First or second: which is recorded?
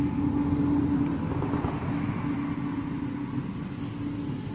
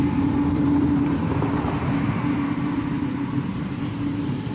first